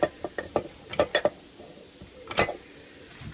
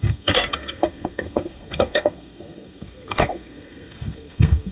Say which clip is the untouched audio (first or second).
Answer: first